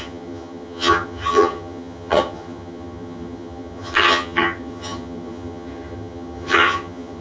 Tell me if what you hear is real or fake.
fake